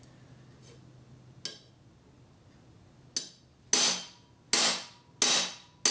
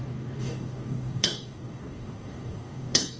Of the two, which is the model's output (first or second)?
second